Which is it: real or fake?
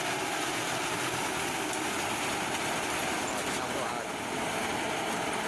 real